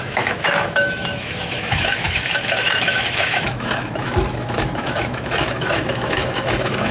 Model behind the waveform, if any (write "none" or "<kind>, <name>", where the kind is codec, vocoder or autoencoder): autoencoder, DAC-VAE